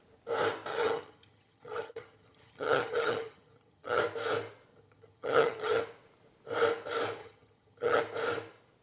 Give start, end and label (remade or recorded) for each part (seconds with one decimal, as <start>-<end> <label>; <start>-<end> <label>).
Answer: 0.0-0.7 recorded; 0.7-4.0 remade; 4.0-4.7 recorded; 4.7-5.8 remade; 5.8-7.2 recorded; 7.2-8.0 remade; 8.0-8.8 recorded